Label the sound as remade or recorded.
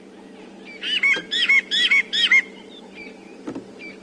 recorded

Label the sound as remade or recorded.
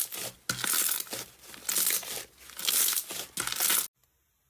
recorded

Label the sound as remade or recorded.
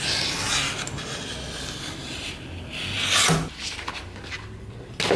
recorded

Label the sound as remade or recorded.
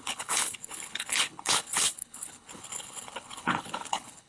remade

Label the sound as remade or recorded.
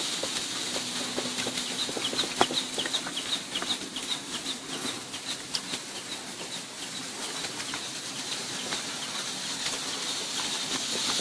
recorded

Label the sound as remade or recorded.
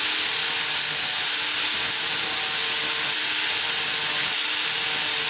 recorded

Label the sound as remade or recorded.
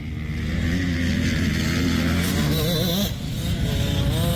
recorded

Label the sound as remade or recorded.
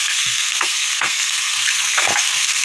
remade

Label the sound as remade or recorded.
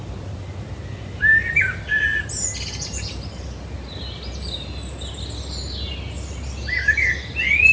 recorded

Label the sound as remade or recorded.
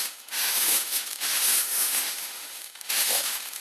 remade